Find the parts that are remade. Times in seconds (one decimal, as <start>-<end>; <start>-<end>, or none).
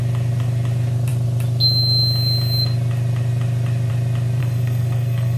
4.4-5.4